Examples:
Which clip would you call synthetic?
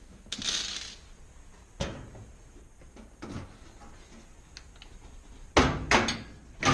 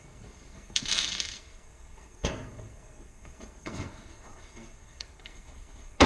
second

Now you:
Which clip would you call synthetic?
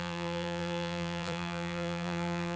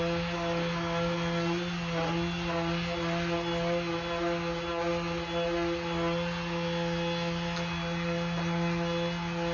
first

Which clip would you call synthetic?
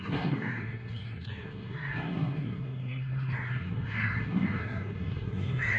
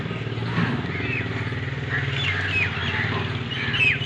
first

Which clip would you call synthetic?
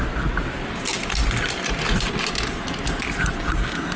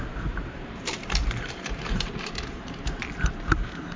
second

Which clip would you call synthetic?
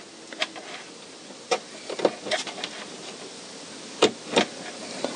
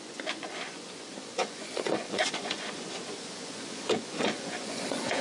second